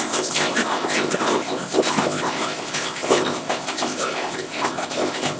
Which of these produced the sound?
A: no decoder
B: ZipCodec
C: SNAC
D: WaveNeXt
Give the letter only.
B